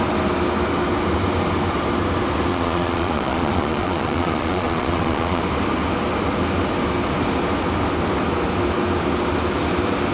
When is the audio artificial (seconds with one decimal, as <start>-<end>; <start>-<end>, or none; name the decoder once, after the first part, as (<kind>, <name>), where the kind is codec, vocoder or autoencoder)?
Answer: 2.5-5.4 (vocoder, Vocos)